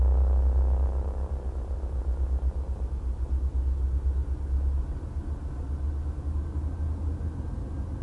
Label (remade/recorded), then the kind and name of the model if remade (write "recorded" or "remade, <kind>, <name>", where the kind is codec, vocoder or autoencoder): recorded